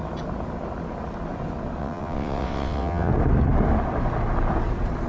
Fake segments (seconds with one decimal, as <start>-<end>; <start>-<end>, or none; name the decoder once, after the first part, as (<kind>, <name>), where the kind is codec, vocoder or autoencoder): 1.8-3.1 (vocoder, WaveNeXt)